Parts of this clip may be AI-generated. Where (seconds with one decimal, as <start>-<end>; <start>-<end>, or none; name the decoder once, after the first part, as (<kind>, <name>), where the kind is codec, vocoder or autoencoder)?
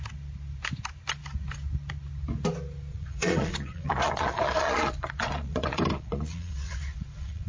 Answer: 2.9-7.5 (vocoder, Vocos)